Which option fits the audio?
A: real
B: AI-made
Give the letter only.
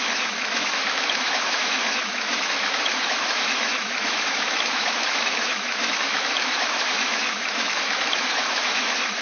B